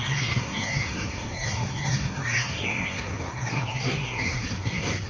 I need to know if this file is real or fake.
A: fake